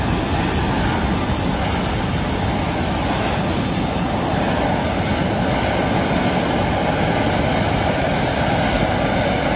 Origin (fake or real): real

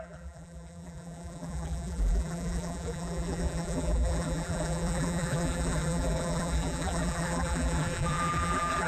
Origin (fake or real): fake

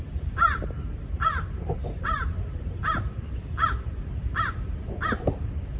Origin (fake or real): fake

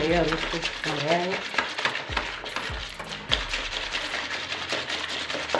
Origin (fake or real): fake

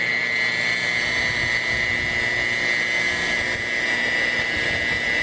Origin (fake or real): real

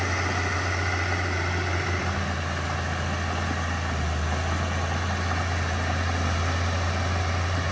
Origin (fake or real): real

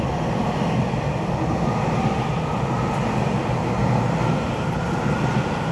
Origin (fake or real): real